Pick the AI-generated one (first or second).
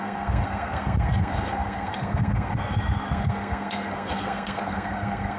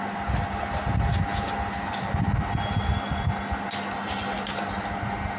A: first